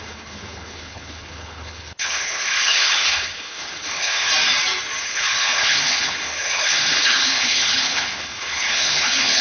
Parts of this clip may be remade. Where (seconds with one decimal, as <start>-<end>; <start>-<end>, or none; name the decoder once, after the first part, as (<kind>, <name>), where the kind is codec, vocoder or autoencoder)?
0.0-4.3 (codec, HILCodec); 5.0-9.4